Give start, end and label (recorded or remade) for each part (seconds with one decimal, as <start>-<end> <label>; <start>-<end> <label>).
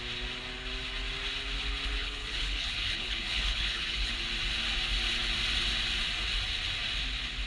0.0-2.0 recorded; 2.0-4.1 remade; 4.1-7.5 recorded